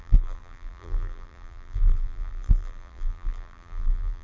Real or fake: fake